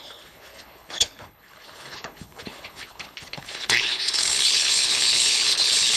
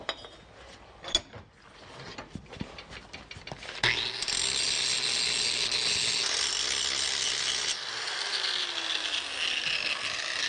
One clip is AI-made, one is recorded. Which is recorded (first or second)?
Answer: second